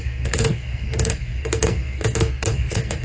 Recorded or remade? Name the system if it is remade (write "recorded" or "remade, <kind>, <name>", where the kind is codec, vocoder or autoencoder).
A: remade, codec, SNAC